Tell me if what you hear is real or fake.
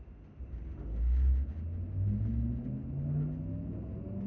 real